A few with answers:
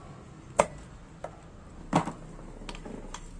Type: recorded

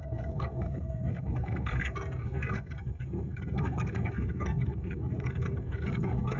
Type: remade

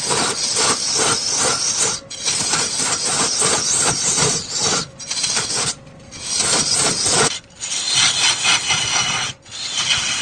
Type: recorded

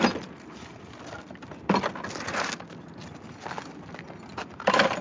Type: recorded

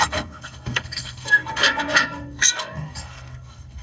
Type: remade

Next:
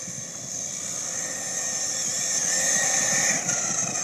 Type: recorded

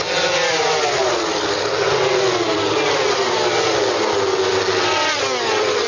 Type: recorded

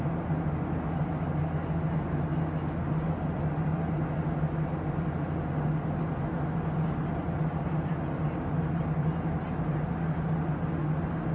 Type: recorded